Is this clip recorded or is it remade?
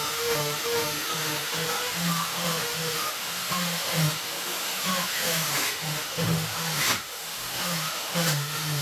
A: remade